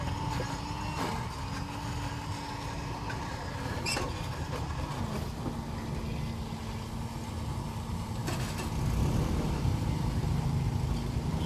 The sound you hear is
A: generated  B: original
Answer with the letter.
B